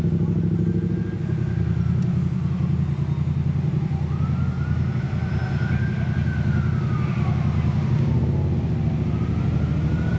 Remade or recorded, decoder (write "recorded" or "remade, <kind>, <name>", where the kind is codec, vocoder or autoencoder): recorded